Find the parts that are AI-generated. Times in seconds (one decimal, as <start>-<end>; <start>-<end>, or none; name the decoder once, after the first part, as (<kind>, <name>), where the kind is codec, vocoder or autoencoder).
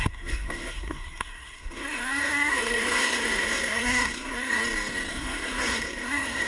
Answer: 0.0-4.6 (codec, SNAC); 5.1-6.5